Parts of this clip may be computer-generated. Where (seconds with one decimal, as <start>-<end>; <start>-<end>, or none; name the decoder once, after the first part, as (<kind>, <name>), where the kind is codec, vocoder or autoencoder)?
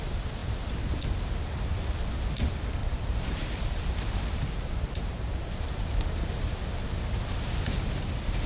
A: 2.8-6.3 (vocoder, BigVGAN v2)